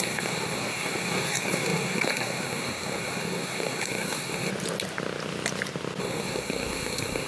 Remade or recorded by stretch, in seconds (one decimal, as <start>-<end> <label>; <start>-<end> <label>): 0.0-4.5 remade; 4.5-6.0 recorded; 6.0-7.3 remade